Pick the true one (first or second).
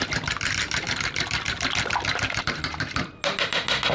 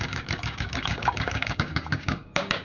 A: first